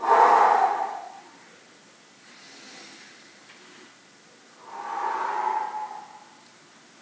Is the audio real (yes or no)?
yes